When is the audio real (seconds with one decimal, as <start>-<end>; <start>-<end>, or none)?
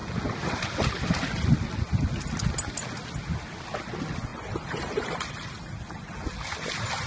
0.0-7.1